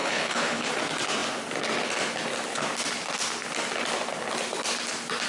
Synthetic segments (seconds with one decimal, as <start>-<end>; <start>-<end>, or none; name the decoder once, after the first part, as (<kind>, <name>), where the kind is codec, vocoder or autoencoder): 0.0-0.7 (codec, HILCodec)